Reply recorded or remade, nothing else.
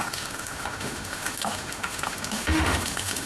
remade